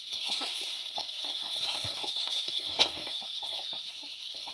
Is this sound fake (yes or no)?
yes